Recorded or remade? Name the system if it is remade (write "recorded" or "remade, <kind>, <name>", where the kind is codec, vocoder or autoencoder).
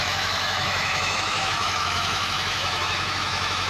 remade, autoencoder, DAC-VAE